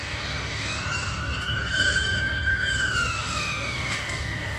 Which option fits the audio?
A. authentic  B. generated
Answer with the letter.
B